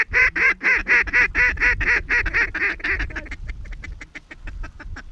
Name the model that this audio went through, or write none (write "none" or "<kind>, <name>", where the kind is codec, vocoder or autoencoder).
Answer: none